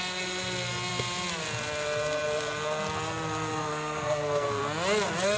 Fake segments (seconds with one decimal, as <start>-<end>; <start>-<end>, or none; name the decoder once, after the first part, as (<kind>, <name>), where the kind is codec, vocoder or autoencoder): 3.5-4.6 (codec, SNAC)